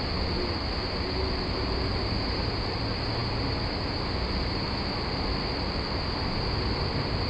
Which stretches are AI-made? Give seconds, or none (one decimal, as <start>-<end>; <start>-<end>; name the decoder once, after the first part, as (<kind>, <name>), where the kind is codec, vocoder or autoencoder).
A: none